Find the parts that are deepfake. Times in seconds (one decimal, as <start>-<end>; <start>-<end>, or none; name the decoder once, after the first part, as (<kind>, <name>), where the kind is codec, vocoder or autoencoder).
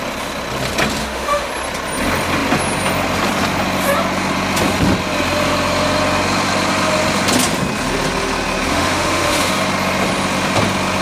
1.0-1.5 (autoencoder, DAC-VAE); 8.7-9.5